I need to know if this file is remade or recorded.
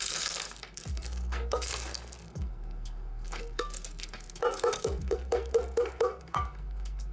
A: remade